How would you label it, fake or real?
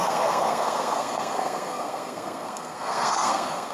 fake